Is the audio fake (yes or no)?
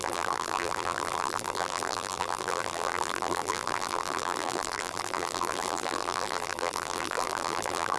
yes